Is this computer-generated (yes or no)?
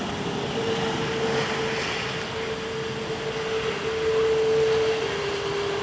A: no